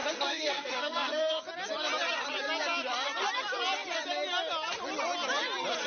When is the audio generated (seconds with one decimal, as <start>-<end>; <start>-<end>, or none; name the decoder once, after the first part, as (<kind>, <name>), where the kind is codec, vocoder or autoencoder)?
0.0-1.4 (codec, SNAC)